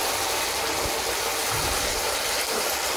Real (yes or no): yes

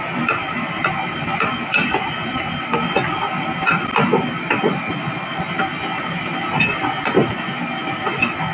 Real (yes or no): yes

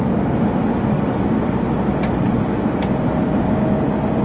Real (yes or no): yes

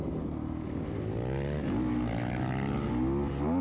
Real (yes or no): yes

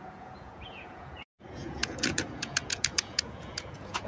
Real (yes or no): no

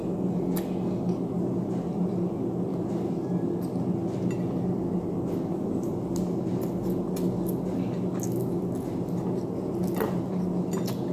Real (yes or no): yes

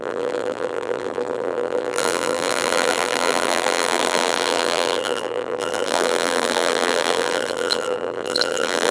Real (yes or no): no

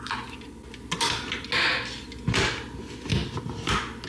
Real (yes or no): yes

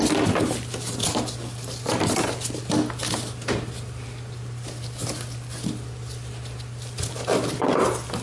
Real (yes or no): yes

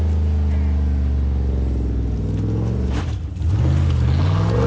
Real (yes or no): yes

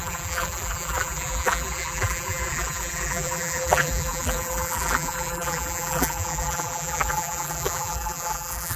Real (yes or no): no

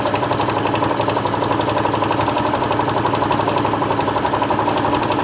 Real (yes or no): yes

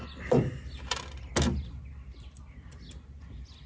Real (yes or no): yes